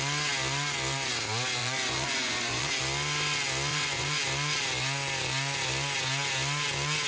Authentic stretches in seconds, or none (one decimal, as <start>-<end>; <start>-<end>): 0.0-1.6; 2.8-3.7; 4.2-7.1